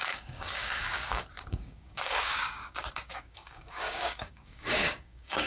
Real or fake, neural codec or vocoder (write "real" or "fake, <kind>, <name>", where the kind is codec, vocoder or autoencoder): fake, codec, DAC